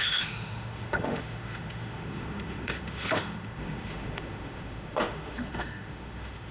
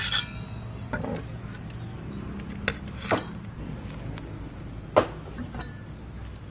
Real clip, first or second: second